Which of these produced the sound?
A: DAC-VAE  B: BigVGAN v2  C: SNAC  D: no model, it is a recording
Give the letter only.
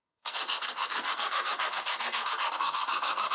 C